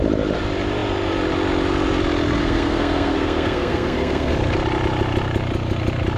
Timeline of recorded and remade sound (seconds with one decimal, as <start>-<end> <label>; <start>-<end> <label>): 0.0-2.4 recorded; 2.4-4.3 remade; 4.3-6.2 recorded